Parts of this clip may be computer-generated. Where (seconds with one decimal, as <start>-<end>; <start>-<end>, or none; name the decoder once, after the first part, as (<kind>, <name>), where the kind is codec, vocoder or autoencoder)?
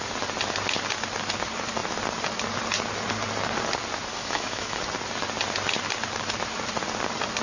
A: 4.1-4.8 (autoencoder, DAC-VAE)